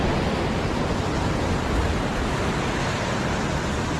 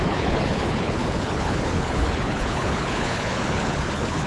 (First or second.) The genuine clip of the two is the first